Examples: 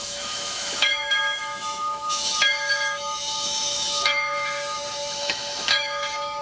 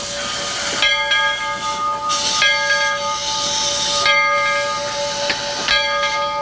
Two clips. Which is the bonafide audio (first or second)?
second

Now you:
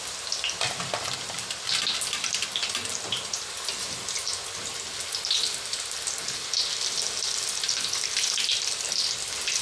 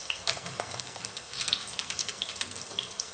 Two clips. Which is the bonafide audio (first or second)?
first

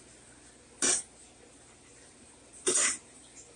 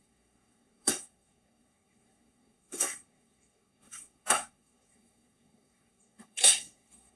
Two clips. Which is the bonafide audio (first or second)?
first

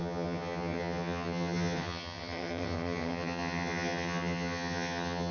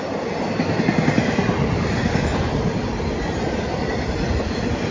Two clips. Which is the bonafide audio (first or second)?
second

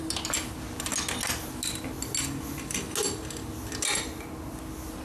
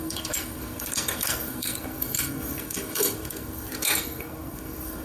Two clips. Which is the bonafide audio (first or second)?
first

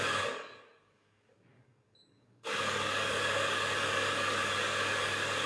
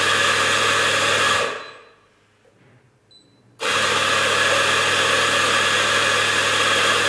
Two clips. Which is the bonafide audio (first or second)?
second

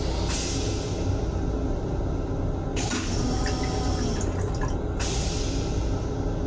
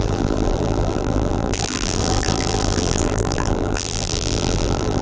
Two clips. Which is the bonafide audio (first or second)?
first